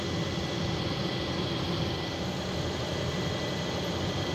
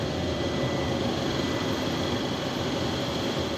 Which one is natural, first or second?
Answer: second